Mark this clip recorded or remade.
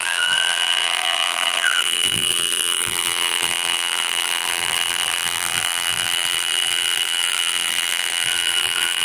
remade